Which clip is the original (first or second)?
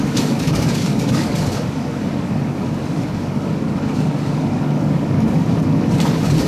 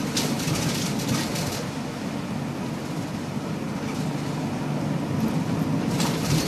second